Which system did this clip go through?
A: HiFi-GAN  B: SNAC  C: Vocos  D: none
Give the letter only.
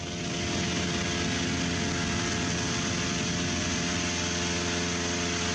D